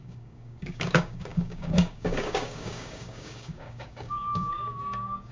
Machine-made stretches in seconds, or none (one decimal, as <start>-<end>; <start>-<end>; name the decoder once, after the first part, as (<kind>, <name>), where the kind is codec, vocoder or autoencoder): 0.0-5.3 (codec, DAC)